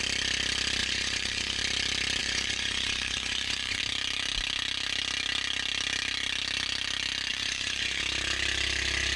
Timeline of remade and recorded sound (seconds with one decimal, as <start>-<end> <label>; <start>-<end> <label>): 0.0-0.8 recorded; 0.8-1.6 remade; 1.6-2.2 recorded; 2.2-3.8 remade; 3.8-7.3 recorded; 7.3-8.0 remade; 8.0-9.2 recorded

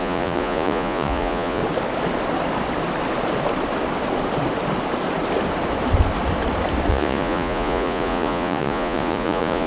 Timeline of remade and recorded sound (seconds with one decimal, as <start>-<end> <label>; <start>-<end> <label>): 0.0-1.6 remade; 1.6-6.9 recorded; 6.9-9.7 remade

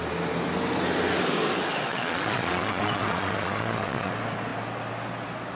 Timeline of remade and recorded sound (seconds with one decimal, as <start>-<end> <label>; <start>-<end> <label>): 0.0-1.9 recorded; 1.9-4.1 remade; 4.1-5.6 recorded

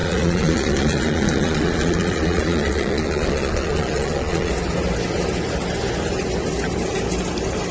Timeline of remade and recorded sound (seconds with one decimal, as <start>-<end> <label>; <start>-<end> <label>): 0.0-4.5 remade; 4.5-7.7 recorded

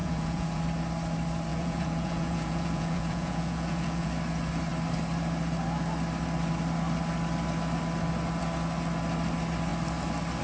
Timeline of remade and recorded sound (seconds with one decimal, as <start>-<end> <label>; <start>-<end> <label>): 0.0-0.6 remade; 0.6-1.5 recorded; 1.5-4.1 remade; 4.1-10.4 recorded

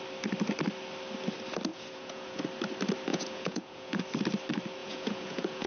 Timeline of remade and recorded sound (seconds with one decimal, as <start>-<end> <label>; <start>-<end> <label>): 0.0-1.7 recorded; 1.7-2.4 remade; 2.4-3.1 recorded; 3.1-4.0 remade; 4.0-4.8 recorded; 4.8-5.7 remade

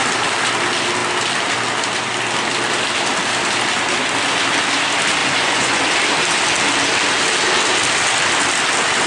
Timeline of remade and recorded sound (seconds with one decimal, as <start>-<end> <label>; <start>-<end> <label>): 0.0-5.2 recorded; 5.2-5.8 remade; 5.8-9.1 recorded

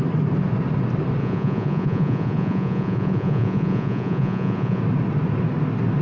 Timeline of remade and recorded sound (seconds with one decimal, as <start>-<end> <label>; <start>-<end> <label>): 0.0-1.2 recorded; 1.2-4.8 remade; 4.8-6.0 recorded